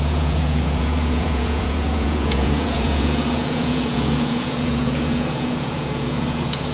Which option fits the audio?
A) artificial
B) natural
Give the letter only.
A